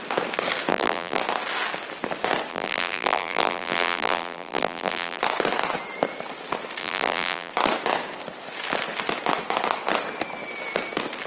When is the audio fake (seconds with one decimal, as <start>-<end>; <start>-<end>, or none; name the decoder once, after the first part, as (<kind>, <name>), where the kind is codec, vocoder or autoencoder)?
0.7-1.2 (vocoder, BigVGAN v2); 2.5-5.2; 6.8-7.5